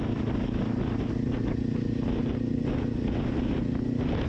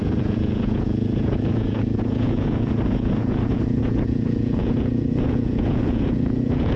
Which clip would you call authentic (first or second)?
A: first